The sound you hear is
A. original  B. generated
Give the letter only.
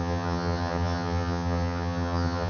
B